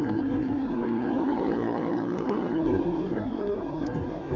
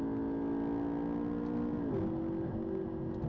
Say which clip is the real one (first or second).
second